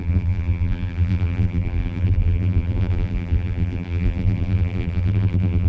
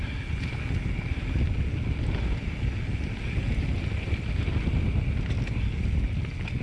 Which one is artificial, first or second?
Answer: first